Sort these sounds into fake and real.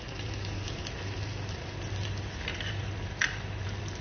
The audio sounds real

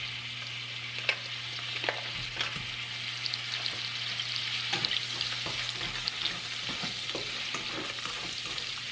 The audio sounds real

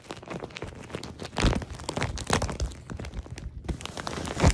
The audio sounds real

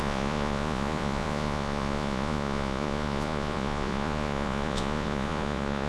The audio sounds fake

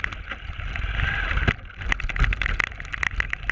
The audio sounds real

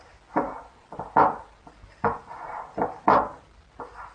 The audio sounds real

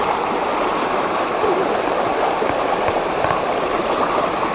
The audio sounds real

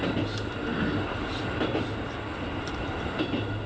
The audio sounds real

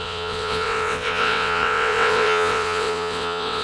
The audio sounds fake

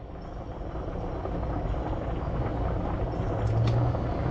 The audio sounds real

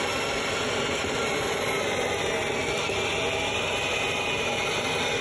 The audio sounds fake